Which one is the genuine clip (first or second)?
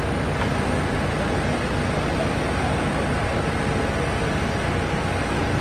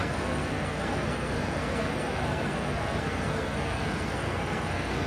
first